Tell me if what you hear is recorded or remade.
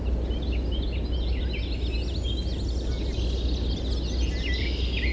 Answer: recorded